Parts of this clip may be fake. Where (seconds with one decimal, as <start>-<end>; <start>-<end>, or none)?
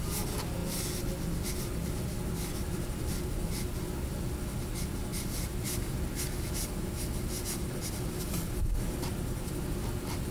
none